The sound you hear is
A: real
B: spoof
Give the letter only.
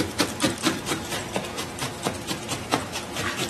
B